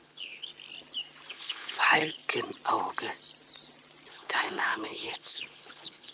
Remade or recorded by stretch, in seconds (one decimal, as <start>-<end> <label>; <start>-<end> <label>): 0.0-0.5 remade; 0.5-1.3 recorded; 1.3-2.2 remade; 2.2-4.1 recorded; 4.1-6.1 remade